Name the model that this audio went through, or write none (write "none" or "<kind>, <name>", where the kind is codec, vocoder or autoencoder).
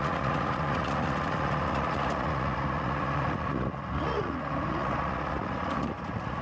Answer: vocoder, Vocos